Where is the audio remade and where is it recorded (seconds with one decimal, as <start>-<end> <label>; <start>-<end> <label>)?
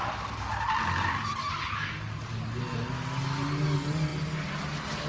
0.0-5.1 recorded